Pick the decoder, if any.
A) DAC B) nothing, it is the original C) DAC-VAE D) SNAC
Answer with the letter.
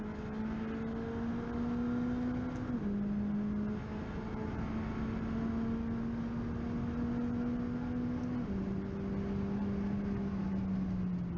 B